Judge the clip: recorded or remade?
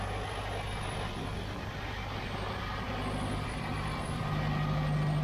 recorded